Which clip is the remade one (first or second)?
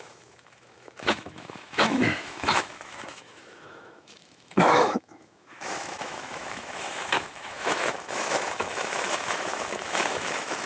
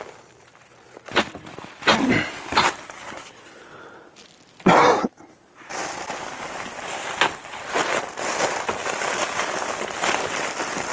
first